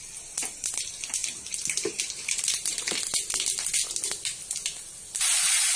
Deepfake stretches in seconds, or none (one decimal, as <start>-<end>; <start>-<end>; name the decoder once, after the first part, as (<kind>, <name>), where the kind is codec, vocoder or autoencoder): 1.2-3.0 (vocoder, BigVGAN v2)